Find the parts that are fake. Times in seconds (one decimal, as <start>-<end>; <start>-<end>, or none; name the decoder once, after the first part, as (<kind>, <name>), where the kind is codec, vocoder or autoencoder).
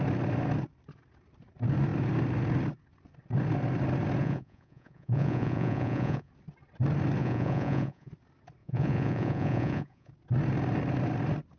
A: 4.2-6.3 (vocoder, Vocos); 7.2-8.1; 8.6-10.1